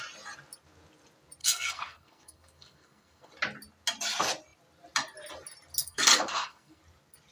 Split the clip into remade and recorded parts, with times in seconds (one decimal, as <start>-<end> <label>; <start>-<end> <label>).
0.0-1.4 recorded; 1.4-3.3 remade; 3.3-5.8 recorded; 5.8-6.8 remade; 6.8-7.3 recorded